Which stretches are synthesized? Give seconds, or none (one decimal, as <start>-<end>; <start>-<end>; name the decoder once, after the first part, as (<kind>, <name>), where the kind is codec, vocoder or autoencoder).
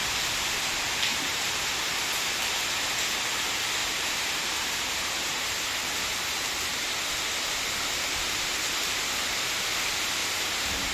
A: 1.1-1.6 (vocoder, BigVGAN v2); 3.8-6.5; 10.2-10.9